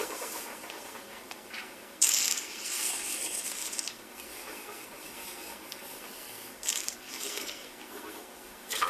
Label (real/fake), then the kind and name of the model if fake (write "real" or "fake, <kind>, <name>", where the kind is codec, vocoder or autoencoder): fake, codec, SNAC